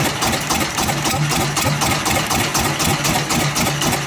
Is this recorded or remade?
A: recorded